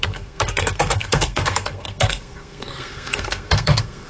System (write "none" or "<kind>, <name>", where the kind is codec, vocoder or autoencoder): codec, SNAC